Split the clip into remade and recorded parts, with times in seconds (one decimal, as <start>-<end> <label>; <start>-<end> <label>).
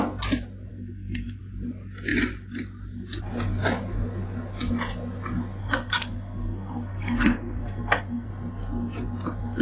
0.0-0.7 recorded; 0.7-1.4 remade; 1.4-5.6 recorded; 5.6-8.3 remade; 8.3-9.6 recorded